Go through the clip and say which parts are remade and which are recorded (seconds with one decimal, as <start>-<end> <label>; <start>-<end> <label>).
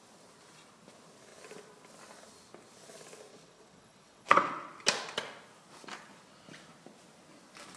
0.0-3.3 recorded; 3.3-4.7 remade; 4.7-7.8 recorded